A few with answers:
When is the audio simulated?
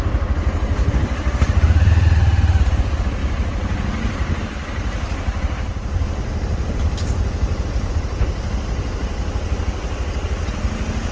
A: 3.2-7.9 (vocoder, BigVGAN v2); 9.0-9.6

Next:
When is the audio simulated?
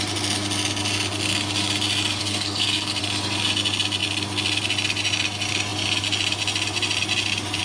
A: 2.2-3.0 (codec, SNAC)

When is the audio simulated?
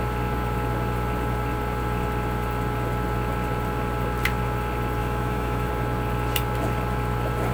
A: 5.0-5.7 (autoencoder, DAC-VAE)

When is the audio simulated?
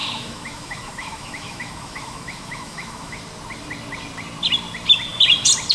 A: 0.0-3.2 (autoencoder, DAC-VAE)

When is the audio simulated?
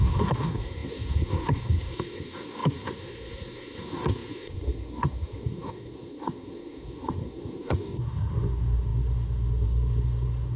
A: 0.0-10.6 (codec, SNAC)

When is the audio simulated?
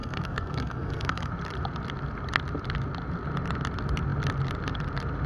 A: 0.0-1.3 (codec, SNAC)